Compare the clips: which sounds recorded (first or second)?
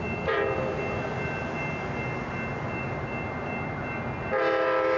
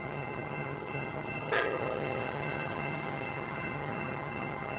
first